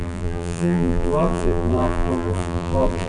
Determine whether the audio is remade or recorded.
remade